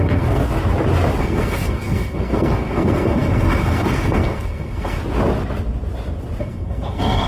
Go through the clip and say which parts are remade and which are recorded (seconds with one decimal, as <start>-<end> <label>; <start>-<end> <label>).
0.0-0.4 remade; 0.4-1.2 recorded; 1.2-5.0 remade; 5.0-6.4 recorded; 6.4-7.3 remade